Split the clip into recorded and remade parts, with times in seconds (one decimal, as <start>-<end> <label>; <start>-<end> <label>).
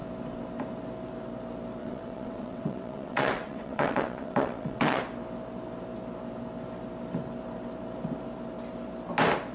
0.0-1.8 recorded; 1.8-5.0 remade; 5.0-9.5 recorded